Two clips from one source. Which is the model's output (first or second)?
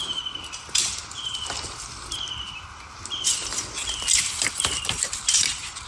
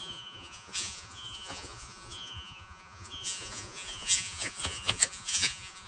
second